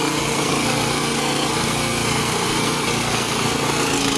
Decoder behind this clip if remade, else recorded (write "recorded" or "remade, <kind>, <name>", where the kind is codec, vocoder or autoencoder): remade, codec, SNAC